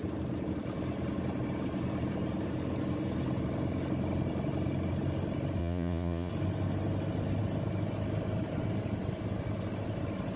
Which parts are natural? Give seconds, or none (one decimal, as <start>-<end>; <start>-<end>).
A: 0.0-5.6; 6.3-10.4